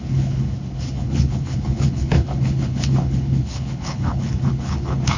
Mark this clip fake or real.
fake